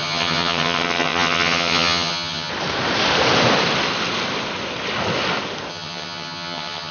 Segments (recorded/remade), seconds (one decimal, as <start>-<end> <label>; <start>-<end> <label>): 0.0-2.5 remade; 2.5-5.7 recorded; 5.7-6.9 remade

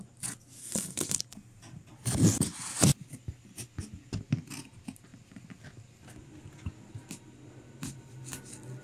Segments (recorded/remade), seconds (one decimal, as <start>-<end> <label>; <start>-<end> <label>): 0.0-0.6 recorded; 0.6-1.2 remade; 1.2-8.8 recorded

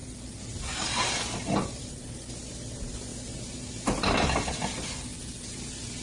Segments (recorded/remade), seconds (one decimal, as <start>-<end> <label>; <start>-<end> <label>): 0.0-6.0 recorded

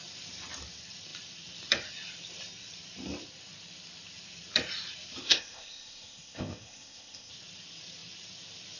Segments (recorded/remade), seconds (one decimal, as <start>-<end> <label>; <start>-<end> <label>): 0.0-5.2 recorded; 5.2-7.3 remade; 7.3-8.8 recorded

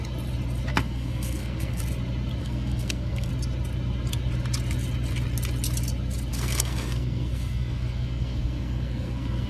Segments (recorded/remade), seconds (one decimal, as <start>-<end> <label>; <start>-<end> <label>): 0.0-0.7 recorded; 0.7-1.8 remade; 1.8-2.4 recorded; 2.4-3.3 remade; 3.3-6.3 recorded; 6.3-9.5 remade

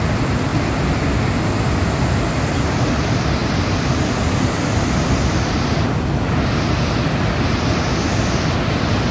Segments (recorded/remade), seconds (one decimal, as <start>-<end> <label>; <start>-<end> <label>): 0.0-3.4 recorded; 3.4-5.5 remade; 5.5-9.1 recorded